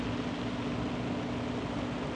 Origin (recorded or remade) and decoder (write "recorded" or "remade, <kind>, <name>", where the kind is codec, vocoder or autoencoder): recorded